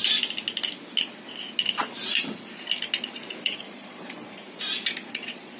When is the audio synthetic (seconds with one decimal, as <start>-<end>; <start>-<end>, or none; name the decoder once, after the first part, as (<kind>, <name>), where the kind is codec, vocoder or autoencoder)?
3.4-4.4 (vocoder, Vocos); 5.1-5.6